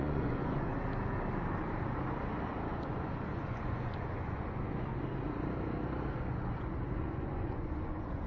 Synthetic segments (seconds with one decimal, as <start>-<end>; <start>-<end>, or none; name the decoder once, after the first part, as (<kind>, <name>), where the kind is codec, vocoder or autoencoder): 0.0-0.7 (vocoder, Vocos); 2.7-4.9; 6.1-8.3